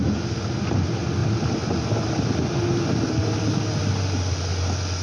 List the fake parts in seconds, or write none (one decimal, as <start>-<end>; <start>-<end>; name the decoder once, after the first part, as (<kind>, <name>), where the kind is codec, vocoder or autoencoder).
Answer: none

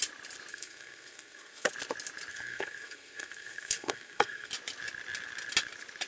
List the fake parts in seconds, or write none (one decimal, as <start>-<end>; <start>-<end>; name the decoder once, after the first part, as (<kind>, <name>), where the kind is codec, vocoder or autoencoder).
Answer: 0.5-1.7 (codec, SNAC); 2.3-4.5

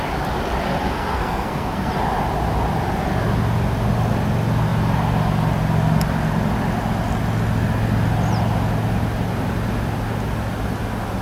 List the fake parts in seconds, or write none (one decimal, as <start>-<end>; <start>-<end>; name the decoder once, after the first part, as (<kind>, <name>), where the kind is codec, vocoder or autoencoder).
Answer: 0.7-1.9 (codec, SNAC)

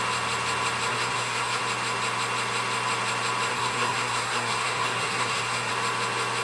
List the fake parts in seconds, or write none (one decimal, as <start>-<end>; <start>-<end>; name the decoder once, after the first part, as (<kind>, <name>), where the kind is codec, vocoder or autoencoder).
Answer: 0.9-1.6 (codec, SNAC); 3.5-5.7